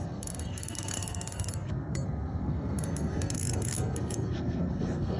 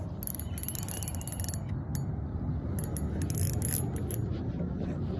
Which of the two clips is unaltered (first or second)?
second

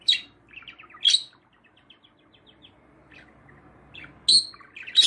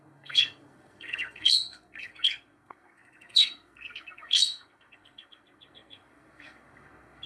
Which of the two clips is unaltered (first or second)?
first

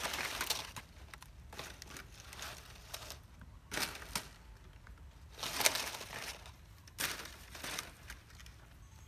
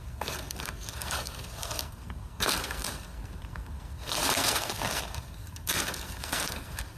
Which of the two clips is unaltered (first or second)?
first